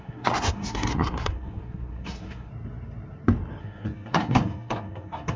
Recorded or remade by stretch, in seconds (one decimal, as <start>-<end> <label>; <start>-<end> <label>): 0.0-2.5 remade; 2.5-3.6 recorded; 3.6-5.4 remade